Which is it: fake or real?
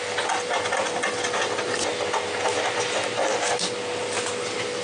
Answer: real